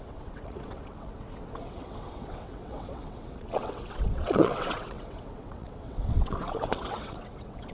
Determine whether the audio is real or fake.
fake